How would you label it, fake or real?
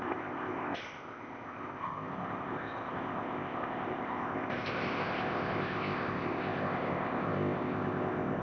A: fake